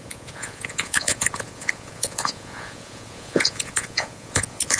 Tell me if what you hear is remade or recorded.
remade